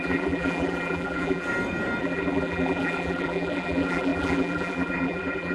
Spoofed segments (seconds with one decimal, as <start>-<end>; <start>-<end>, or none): 0.0-1.5; 2.0-5.5